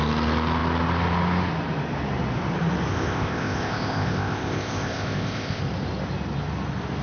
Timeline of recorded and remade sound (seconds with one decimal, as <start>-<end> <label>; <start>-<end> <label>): 0.0-2.9 recorded; 2.9-5.6 remade; 5.6-7.0 recorded